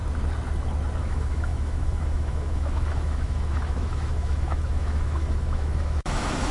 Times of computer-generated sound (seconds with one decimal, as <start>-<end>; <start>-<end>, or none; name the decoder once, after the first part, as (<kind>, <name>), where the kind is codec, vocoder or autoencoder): 1.0-6.5 (autoencoder, DAC-VAE)